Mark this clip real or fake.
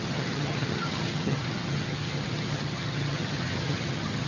fake